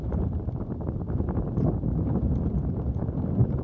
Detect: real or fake fake